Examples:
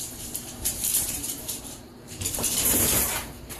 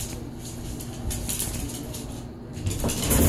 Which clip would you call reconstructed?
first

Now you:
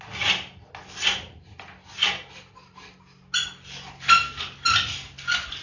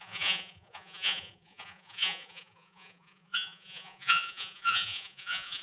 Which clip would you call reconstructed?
second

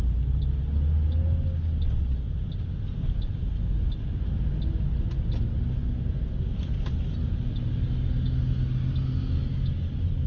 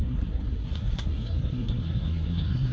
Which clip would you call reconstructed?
second